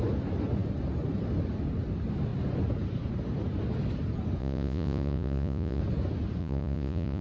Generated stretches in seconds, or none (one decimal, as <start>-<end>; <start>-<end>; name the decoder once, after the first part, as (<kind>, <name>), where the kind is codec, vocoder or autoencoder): 4.4-5.8 (vocoder, Vocos); 6.4-7.2